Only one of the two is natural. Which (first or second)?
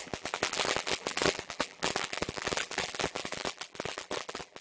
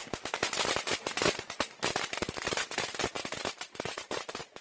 second